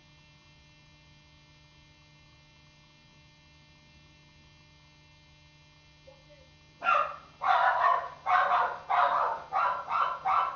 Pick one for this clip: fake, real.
real